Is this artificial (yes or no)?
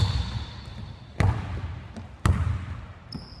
no